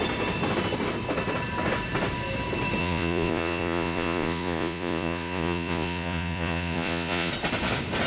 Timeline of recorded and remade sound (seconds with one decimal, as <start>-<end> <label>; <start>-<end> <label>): 0.0-2.8 recorded; 2.8-7.3 remade; 7.3-8.1 recorded